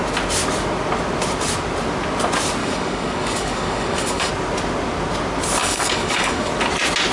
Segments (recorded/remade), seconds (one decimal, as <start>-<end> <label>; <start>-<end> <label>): 0.0-2.6 recorded; 2.6-4.3 remade; 4.3-5.6 recorded; 5.6-6.5 remade; 6.5-7.1 recorded